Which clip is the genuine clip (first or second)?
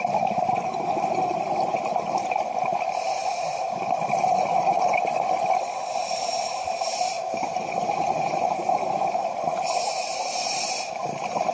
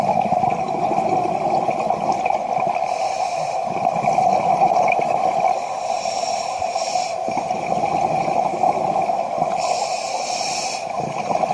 second